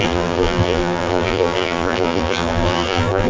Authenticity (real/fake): fake